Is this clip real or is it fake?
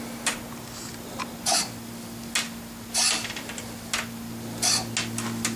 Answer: real